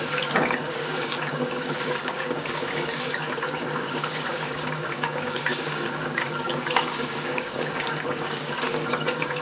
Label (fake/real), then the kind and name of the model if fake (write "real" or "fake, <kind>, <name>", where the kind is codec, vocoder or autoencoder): fake, codec, DAC